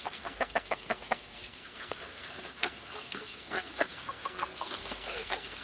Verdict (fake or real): fake